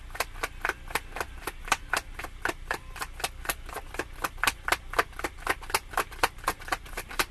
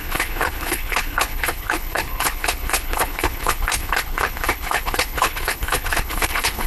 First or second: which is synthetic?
second